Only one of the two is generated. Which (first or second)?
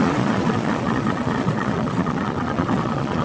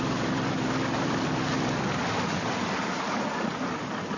first